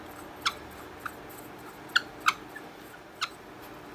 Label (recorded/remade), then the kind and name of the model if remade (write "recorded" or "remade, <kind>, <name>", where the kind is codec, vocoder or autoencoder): recorded